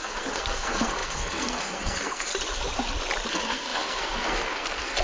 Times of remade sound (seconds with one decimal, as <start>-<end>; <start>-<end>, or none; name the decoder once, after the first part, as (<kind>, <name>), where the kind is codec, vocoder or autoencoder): 0.0-2.3 (codec, SNAC); 3.3-5.0